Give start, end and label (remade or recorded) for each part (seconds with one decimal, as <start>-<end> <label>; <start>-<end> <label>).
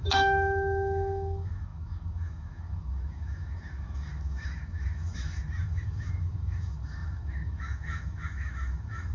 0.0-9.1 remade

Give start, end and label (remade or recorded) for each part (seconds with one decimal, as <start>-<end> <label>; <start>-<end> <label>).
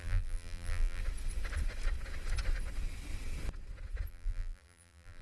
0.0-1.0 remade; 1.0-4.1 recorded; 4.1-5.2 remade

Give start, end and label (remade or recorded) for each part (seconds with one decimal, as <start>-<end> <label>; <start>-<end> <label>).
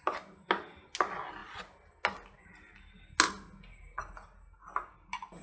0.0-5.4 recorded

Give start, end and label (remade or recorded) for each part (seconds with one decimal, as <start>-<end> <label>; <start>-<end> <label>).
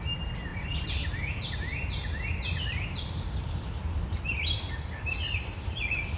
0.0-2.7 recorded; 2.7-6.2 remade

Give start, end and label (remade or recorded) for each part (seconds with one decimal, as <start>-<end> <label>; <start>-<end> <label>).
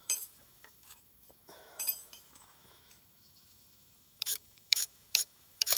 0.0-5.8 remade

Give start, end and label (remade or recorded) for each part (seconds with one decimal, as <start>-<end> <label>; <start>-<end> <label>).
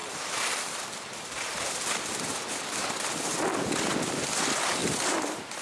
0.0-5.6 recorded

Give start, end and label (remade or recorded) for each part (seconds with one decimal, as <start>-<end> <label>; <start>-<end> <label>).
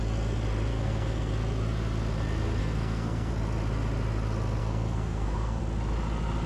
0.0-0.7 recorded; 0.7-1.3 remade; 1.3-2.6 recorded; 2.6-3.3 remade; 3.3-4.6 recorded; 4.6-5.6 remade; 5.6-6.5 recorded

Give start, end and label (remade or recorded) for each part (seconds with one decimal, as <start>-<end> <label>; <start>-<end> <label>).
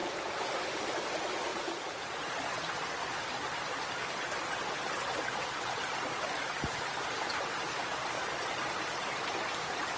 0.0-0.5 remade; 0.5-1.5 recorded; 1.5-2.2 remade; 2.2-10.0 recorded